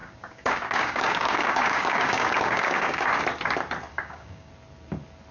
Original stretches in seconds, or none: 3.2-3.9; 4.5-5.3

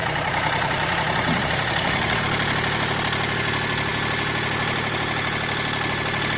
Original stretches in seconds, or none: 2.2-6.4